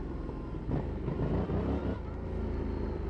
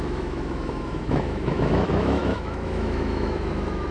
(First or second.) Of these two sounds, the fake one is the second